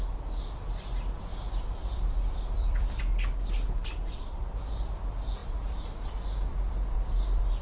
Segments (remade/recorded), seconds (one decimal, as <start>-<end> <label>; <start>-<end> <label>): 0.0-1.3 recorded; 1.3-3.0 remade; 3.0-3.8 recorded; 3.8-4.4 remade; 4.4-5.4 recorded; 5.4-6.0 remade; 6.0-6.5 recorded; 6.5-7.6 remade